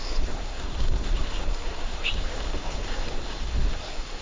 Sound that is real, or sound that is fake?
fake